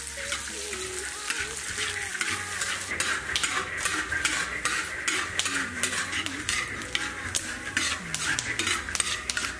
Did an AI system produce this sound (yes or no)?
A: no